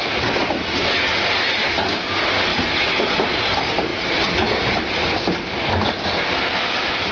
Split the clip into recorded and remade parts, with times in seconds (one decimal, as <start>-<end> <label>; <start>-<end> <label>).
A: 0.0-2.5 recorded; 2.5-3.1 remade; 3.1-7.1 recorded